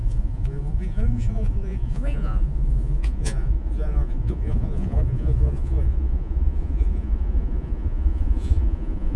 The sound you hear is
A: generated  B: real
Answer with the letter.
A